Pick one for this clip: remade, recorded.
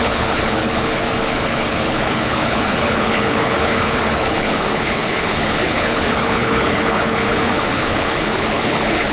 remade